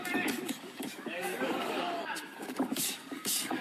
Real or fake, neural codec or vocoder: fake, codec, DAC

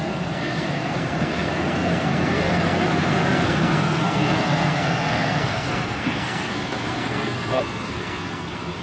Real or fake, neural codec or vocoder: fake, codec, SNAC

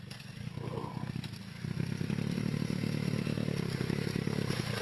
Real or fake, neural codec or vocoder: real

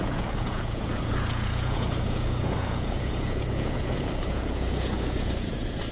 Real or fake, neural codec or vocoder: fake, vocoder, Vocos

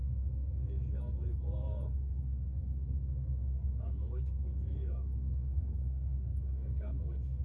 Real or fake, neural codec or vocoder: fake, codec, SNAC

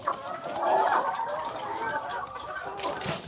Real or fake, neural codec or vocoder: fake, vocoder, BigVGAN v2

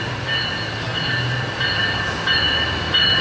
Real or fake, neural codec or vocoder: real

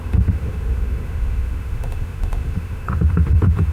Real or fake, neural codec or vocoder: fake, autoencoder, DAC-VAE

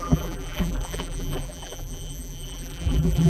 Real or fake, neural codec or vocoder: fake, vocoder, BigVGAN v2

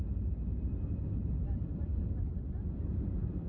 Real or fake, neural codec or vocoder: real